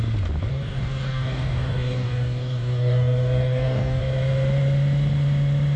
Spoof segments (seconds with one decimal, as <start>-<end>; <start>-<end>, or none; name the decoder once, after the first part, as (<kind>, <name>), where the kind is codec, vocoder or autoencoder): 0.5-4.0 (codec, DAC)

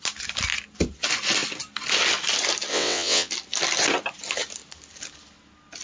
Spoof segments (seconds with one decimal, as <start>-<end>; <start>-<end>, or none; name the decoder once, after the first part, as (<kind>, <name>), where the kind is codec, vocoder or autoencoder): 2.7-3.3 (vocoder, WaveNeXt)

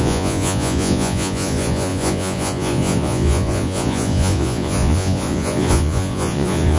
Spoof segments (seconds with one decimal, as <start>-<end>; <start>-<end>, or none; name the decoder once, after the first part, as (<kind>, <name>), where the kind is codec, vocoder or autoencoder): 0.0-6.8 (vocoder, Vocos)

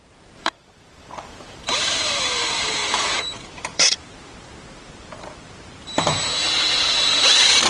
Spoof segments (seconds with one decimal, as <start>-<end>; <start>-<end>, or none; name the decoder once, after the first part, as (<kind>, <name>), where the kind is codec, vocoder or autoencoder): 0.0-6.3 (vocoder, BigVGAN v2); 6.8-7.7

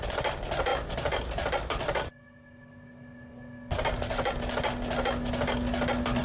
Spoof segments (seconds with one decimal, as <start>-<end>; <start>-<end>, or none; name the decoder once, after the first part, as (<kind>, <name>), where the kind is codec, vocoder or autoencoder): none